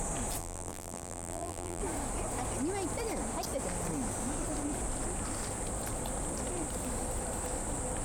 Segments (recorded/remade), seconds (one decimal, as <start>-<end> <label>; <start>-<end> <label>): 0.0-0.4 recorded; 0.4-1.8 remade; 1.8-8.0 recorded